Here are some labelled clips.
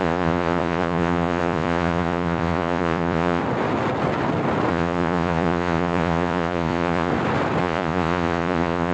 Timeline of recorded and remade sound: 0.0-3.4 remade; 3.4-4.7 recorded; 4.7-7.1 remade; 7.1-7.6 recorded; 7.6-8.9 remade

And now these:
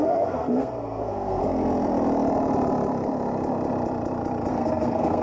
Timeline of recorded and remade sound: 0.0-1.4 remade; 1.4-4.5 recorded; 4.5-5.2 remade

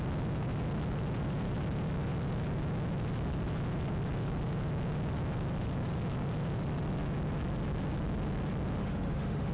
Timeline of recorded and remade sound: 0.0-8.8 recorded; 8.8-9.5 remade

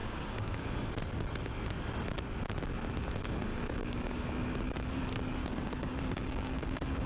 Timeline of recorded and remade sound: 0.0-0.9 remade; 0.9-3.5 recorded; 3.5-4.3 remade; 4.3-5.4 recorded; 5.4-7.1 remade